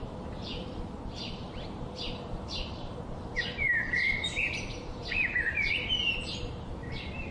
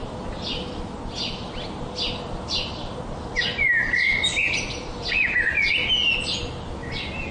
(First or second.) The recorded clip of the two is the second